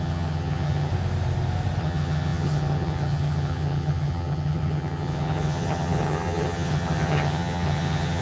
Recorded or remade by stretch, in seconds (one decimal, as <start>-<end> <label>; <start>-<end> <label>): 0.0-0.9 remade; 0.9-1.8 recorded; 1.8-8.2 remade